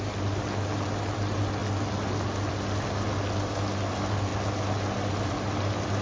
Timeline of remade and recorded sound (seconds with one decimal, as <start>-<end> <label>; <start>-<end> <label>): 0.0-6.0 recorded